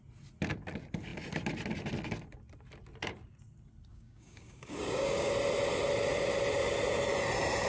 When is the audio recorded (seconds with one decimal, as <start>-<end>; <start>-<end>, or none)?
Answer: 0.0-3.9; 5.3-7.7